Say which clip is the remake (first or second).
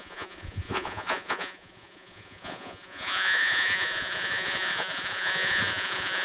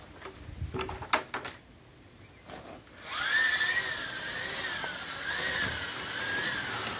first